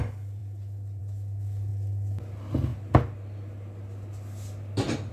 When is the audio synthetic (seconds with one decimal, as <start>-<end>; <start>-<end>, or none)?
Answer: none